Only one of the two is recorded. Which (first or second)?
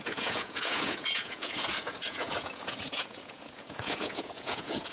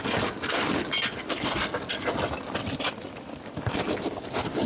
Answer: second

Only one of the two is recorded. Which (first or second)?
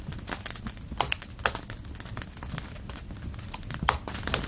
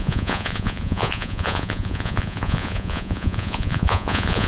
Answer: first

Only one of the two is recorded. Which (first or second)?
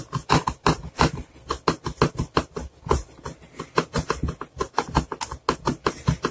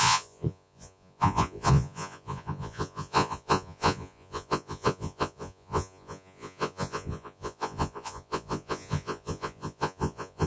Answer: first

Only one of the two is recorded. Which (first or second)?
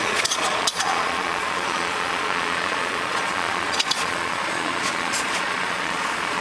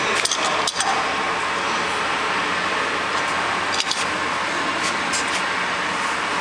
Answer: second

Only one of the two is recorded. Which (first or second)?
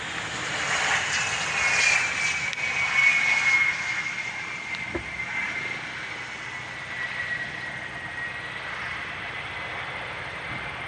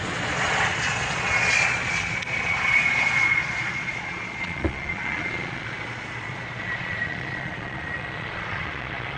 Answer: first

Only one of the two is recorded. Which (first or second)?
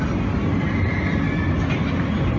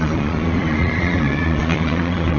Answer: first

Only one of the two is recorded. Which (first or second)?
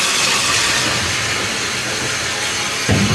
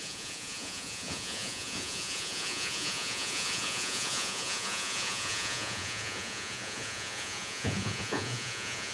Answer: first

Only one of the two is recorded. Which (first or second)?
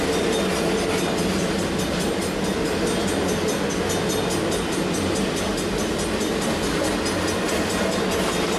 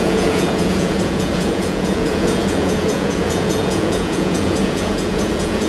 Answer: first